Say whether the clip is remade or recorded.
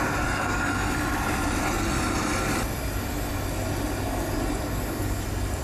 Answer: recorded